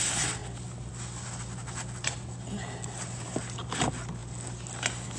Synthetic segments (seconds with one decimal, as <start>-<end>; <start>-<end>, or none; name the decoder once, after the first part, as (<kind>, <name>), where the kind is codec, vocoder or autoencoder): none